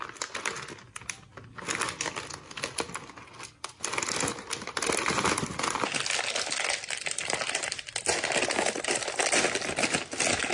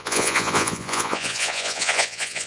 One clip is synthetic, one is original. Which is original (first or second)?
first